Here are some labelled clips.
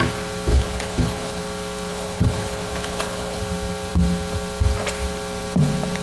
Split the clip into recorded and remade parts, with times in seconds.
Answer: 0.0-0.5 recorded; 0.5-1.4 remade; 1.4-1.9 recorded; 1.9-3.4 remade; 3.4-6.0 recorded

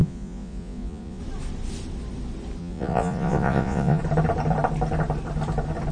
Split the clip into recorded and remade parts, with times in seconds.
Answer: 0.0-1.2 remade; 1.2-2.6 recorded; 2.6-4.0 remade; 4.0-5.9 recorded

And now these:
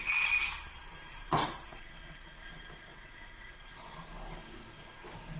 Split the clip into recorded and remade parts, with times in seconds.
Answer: 0.0-1.4 recorded; 1.4-2.4 remade; 2.4-2.9 recorded; 2.9-3.6 remade; 3.6-5.4 recorded

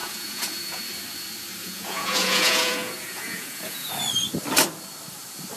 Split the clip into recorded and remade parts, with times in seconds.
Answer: 0.0-0.8 remade; 0.8-1.6 recorded; 1.6-3.9 remade; 3.9-5.6 recorded

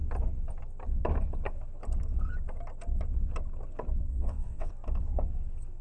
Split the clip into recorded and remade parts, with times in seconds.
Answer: 0.0-4.1 recorded; 4.1-4.7 remade; 4.7-5.8 recorded

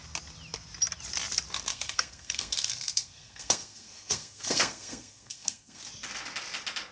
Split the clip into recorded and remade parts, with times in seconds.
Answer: 0.0-1.7 recorded; 1.7-5.8 remade; 5.8-6.9 recorded